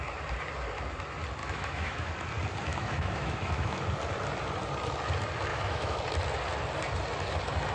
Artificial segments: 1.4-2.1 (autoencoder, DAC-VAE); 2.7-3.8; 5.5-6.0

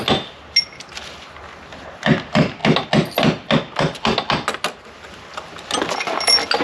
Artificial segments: none

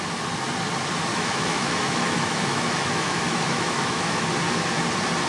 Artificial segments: 1.1-4.3 (autoencoder, DAC-VAE)

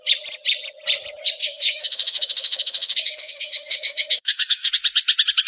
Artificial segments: 1.4-4.7 (autoencoder, DAC-VAE)

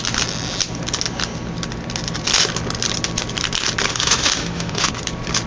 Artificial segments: 3.9-4.9 (autoencoder, DAC-VAE)

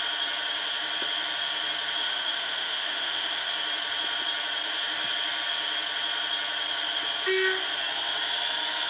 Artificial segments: 2.0-3.5 (autoencoder, DAC-VAE)

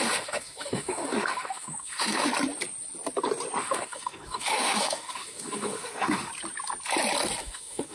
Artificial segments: 0.0-2.3 (autoencoder, DAC-VAE); 3.6-6.3; 7.4-7.9